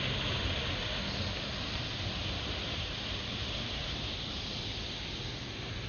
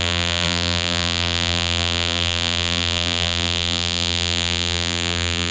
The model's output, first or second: second